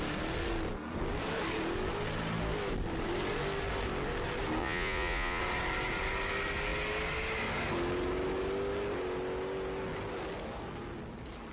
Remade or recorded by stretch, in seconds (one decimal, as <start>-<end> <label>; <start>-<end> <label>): 0.0-4.6 recorded; 4.6-5.4 remade; 5.4-11.5 recorded